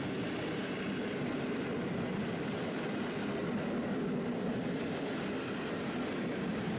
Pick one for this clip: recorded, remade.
recorded